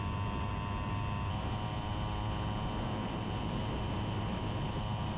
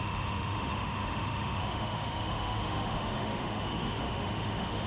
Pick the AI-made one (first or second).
second